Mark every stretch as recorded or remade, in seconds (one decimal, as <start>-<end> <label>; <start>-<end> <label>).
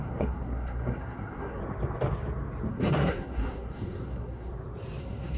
0.0-1.6 remade; 1.6-2.7 recorded; 2.7-4.5 remade; 4.5-5.0 recorded; 5.0-5.4 remade